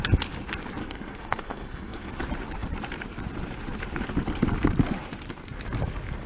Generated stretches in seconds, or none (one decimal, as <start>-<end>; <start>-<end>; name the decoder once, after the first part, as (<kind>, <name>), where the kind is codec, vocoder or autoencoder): 0.8-2.1 (codec, SNAC)